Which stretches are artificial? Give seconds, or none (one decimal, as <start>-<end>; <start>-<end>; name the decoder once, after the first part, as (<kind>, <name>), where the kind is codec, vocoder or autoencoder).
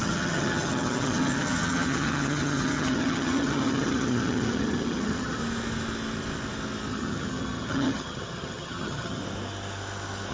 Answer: 0.0-5.4 (vocoder, HiFi-GAN); 6.9-9.2